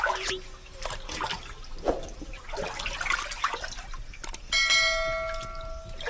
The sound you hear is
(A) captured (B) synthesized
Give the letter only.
A